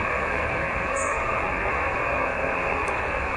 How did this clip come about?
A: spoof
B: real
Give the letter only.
A